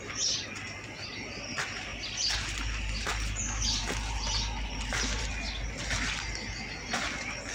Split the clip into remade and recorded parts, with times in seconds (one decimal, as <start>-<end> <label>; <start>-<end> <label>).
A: 0.0-7.5 recorded